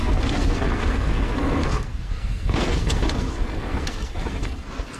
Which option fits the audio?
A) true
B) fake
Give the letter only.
B